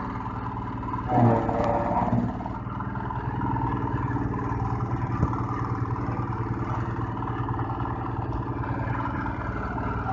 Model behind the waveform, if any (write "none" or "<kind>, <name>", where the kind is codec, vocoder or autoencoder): none